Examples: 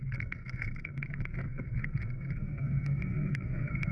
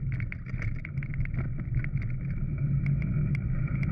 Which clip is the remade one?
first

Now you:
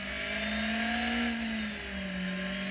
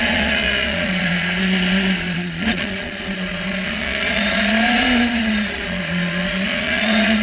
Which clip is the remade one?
second